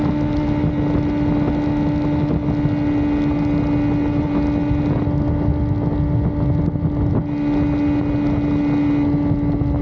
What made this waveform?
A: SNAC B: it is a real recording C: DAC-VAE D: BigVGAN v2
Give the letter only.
B